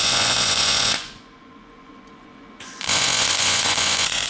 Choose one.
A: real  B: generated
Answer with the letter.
B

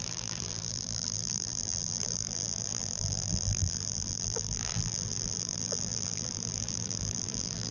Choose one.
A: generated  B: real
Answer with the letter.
A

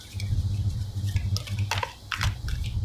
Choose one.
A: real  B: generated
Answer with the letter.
A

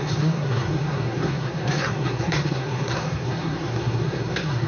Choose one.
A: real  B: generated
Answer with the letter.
B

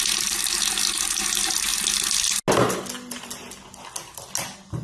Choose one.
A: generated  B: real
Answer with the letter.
B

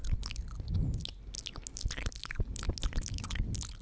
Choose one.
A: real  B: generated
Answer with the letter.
A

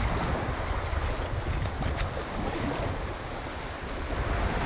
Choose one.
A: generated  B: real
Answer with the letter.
B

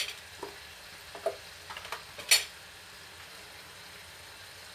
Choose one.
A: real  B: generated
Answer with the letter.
A